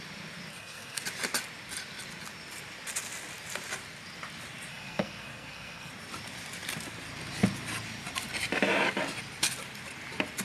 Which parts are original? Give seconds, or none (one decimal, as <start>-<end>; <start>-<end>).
0.0-0.5; 1.0-4.7; 5.9-10.4